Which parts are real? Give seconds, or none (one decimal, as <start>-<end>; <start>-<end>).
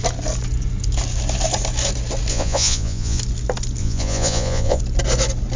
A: 0.0-2.3; 3.2-3.8; 4.8-5.6